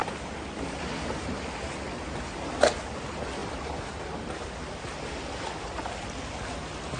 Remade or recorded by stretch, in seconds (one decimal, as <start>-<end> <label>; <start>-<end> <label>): 0.0-7.0 recorded